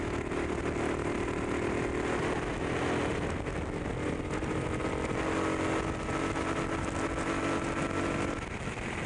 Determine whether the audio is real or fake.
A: real